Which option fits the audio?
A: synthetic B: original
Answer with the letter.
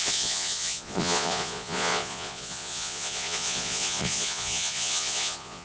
A